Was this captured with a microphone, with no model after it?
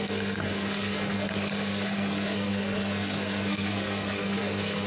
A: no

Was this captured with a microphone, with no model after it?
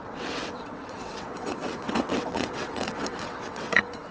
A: no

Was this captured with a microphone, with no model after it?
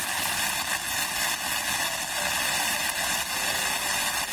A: yes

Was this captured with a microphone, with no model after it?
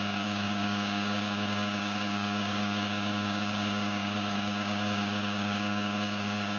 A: no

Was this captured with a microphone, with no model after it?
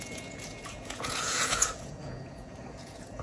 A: no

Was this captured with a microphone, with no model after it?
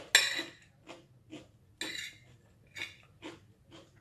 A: yes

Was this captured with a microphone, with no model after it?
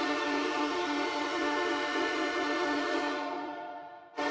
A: no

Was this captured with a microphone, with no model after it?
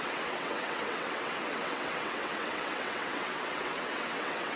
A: no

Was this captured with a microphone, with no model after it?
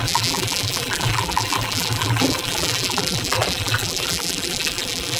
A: no